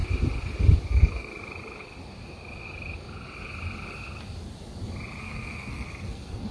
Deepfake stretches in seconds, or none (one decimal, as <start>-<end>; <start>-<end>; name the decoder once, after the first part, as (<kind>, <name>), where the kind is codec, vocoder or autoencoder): 0.9-1.3 (codec, SNAC); 5.2-6.5